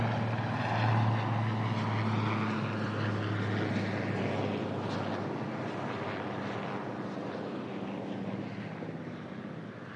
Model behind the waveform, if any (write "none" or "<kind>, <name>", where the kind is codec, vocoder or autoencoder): none